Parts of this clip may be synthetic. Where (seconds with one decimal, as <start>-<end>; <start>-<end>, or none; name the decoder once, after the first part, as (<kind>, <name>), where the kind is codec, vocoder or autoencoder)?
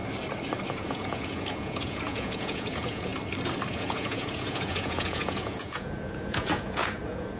0.7-3.1 (vocoder, Vocos); 3.7-7.4